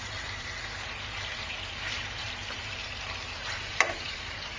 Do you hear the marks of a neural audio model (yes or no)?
yes